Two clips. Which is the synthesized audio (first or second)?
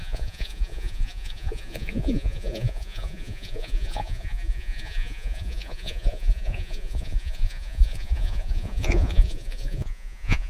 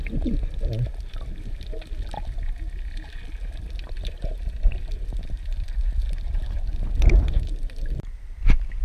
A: first